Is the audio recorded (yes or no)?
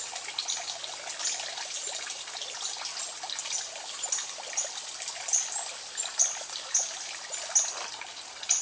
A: yes